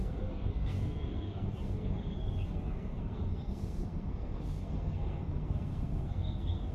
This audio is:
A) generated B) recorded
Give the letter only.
A